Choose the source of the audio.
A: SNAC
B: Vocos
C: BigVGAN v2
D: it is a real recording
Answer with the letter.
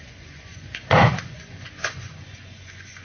B